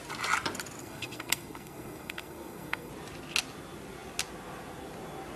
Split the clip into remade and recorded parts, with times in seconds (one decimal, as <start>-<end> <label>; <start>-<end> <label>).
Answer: 0.0-0.8 recorded; 0.8-2.9 remade; 2.9-5.4 recorded

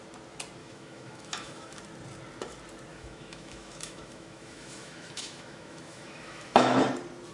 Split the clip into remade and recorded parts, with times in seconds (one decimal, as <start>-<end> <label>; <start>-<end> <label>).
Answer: 0.0-0.6 recorded; 0.6-1.8 remade; 1.8-2.9 recorded; 2.9-6.8 remade; 6.8-7.3 recorded